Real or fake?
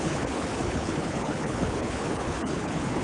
fake